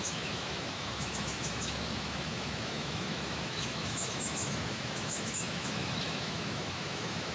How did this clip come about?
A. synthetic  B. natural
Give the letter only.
A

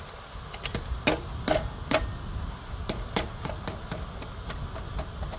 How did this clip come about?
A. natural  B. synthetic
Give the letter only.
A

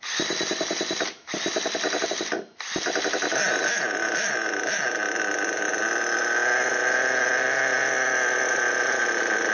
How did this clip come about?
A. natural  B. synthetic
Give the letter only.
A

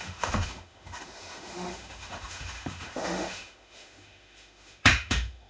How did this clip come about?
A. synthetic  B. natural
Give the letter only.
A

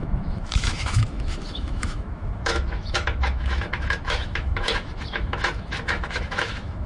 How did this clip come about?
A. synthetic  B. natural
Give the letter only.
A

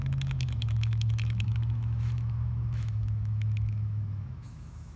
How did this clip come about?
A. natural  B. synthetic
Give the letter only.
B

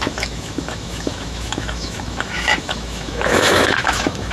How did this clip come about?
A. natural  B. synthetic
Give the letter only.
B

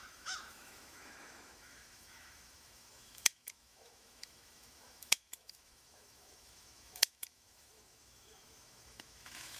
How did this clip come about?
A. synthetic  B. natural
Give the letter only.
A